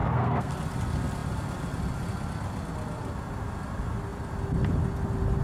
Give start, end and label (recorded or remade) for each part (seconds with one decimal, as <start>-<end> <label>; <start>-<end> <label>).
0.0-0.5 remade; 0.5-5.4 recorded